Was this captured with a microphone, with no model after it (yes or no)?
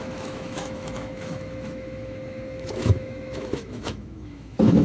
no